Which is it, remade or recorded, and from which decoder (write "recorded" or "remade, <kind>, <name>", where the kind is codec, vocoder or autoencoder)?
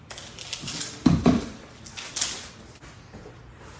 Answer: recorded